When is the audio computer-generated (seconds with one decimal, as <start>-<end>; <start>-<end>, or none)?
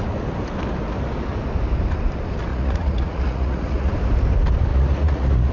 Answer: 2.5-3.9; 4.7-5.5